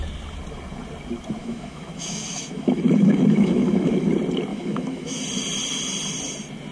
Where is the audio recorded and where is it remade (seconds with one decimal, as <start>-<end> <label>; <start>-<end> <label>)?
0.0-1.4 recorded; 1.4-4.1 remade; 4.1-4.5 recorded; 4.5-5.2 remade; 5.2-6.7 recorded

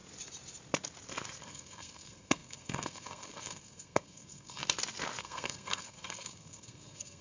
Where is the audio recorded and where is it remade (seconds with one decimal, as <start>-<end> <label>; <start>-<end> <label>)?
0.0-1.4 recorded; 1.4-4.6 remade; 4.6-5.2 recorded; 5.2-7.2 remade

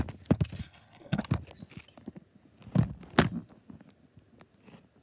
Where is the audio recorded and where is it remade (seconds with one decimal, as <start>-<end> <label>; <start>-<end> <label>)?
0.0-0.6 recorded; 0.6-1.2 remade; 1.2-5.0 recorded

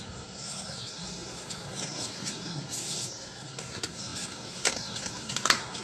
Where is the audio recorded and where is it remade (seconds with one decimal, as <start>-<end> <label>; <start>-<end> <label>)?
0.0-5.8 remade

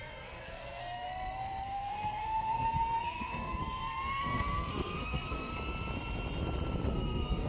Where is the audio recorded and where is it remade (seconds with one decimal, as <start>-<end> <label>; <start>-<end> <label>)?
0.0-5.5 remade; 5.5-6.9 recorded; 6.9-7.5 remade

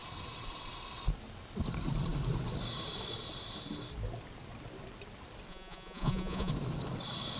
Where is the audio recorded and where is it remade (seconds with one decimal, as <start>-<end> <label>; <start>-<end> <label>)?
0.0-5.5 recorded; 5.5-6.5 remade; 6.5-7.4 recorded